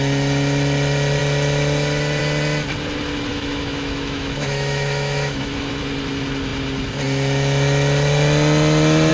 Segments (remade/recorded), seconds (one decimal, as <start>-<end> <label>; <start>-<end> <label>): 0.0-3.3 recorded; 3.3-5.8 remade; 5.8-9.1 recorded